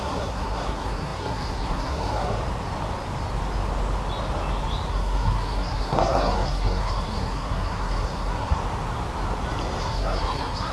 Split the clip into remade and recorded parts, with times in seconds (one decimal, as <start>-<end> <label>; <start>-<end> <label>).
0.0-2.4 remade; 2.4-4.9 recorded; 4.9-8.6 remade; 8.6-9.8 recorded; 9.8-10.7 remade